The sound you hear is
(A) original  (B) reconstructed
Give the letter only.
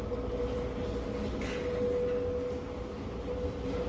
A